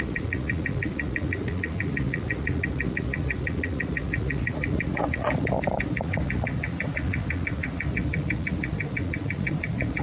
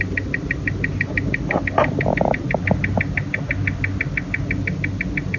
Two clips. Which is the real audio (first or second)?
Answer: second